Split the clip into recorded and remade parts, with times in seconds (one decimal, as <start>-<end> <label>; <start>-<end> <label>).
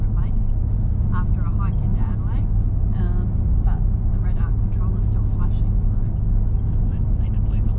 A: 0.0-7.8 recorded